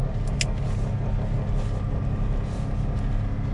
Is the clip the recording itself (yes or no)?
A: yes